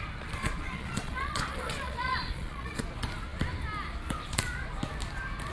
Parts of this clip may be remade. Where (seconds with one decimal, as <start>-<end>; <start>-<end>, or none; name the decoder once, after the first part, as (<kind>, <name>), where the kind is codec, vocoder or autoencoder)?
0.4-2.8 (vocoder, Vocos)